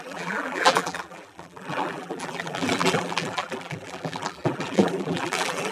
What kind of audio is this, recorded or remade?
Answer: remade